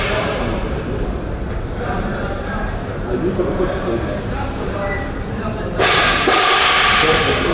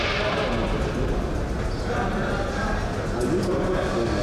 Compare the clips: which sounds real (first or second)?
second